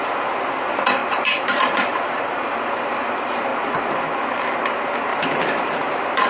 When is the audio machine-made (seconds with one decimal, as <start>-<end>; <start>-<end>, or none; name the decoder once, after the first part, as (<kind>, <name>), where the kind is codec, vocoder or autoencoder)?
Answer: 1.0-3.1 (vocoder, BigVGAN v2); 5.1-6.3